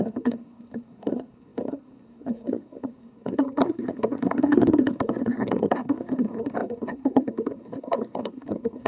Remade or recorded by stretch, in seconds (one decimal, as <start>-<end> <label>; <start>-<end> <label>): 0.0-8.9 remade